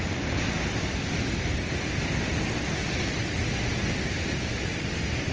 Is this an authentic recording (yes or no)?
yes